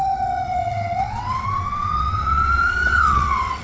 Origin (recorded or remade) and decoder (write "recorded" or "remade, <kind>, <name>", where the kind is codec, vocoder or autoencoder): remade, vocoder, WaveNeXt